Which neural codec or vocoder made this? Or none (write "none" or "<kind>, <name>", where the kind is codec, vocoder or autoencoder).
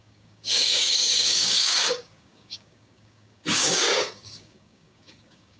codec, DAC